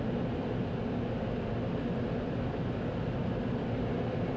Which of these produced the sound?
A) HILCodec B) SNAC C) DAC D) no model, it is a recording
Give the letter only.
D